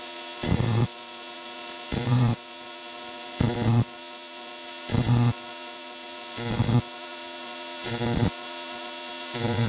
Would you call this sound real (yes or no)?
no